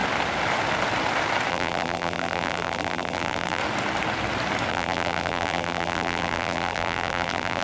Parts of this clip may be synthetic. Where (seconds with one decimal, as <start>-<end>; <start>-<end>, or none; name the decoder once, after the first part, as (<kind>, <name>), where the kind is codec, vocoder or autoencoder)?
1.5-3.6 (vocoder, BigVGAN v2); 4.7-7.6